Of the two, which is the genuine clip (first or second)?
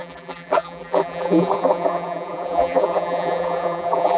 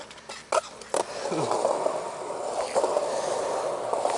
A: second